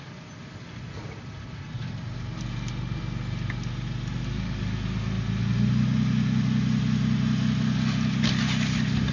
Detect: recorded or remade recorded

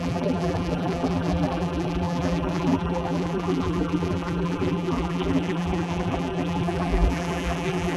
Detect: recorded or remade remade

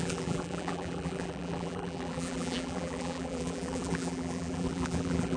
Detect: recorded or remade remade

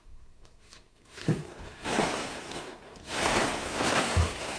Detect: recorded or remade remade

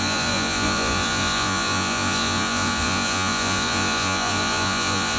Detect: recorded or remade remade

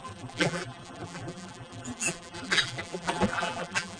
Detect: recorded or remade remade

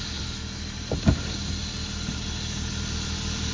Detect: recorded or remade recorded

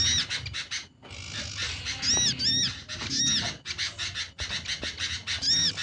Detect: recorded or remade recorded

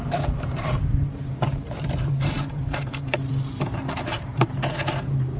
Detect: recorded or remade remade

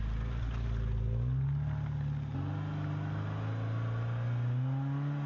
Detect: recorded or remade recorded